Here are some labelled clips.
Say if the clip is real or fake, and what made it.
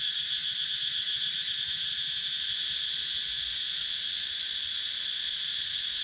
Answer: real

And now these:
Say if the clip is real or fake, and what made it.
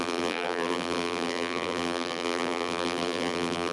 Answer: fake, vocoder, BigVGAN v2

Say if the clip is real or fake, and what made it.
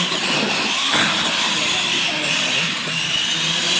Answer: real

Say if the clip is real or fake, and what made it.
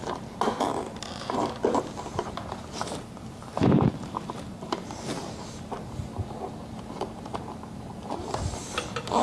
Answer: fake, vocoder, BigVGAN v2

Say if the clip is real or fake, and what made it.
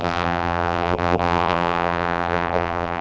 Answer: fake, vocoder, BigVGAN v2